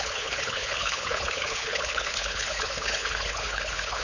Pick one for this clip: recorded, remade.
remade